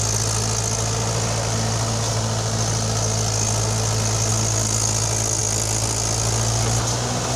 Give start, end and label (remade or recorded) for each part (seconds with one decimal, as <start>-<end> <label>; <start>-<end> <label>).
0.0-7.4 recorded